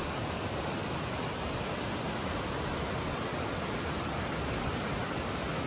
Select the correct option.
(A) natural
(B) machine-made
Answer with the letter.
A